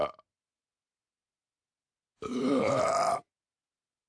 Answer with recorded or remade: recorded